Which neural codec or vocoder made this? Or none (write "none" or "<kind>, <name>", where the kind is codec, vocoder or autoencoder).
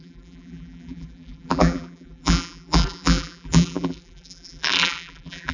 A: vocoder, BigVGAN v2